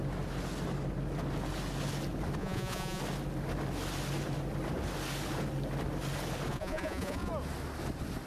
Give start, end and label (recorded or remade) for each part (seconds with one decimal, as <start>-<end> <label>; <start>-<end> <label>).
0.0-2.4 recorded; 2.4-3.0 remade; 3.0-6.5 recorded; 6.5-7.3 remade; 7.3-8.3 recorded